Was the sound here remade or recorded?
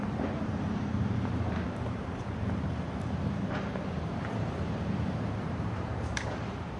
remade